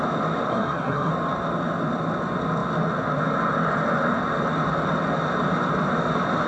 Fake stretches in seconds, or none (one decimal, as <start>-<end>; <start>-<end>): 0.5-1.1